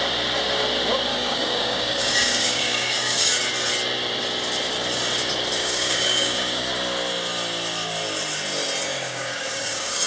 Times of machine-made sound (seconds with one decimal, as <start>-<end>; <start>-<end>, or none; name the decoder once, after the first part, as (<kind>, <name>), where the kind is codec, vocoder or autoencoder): 1.1-3.4 (codec, DAC); 5.6-6.7; 8.9-10.1